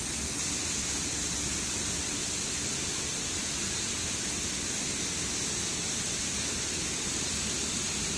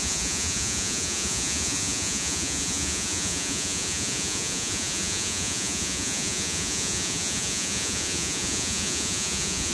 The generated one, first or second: second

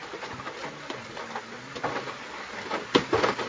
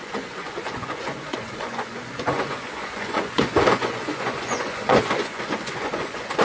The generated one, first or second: second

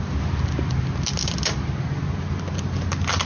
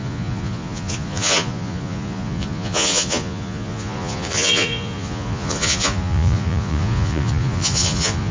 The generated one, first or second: second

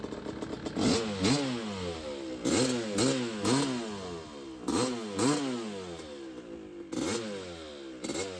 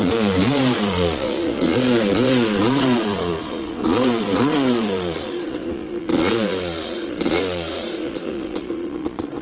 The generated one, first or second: second